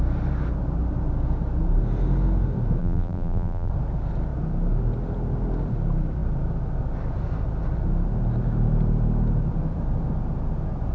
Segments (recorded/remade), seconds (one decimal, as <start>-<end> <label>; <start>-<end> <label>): 0.0-2.8 recorded; 2.8-3.7 remade; 3.7-10.9 recorded